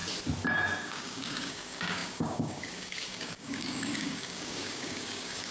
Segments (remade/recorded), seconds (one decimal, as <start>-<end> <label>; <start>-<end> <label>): 0.0-0.8 recorded; 0.8-5.5 remade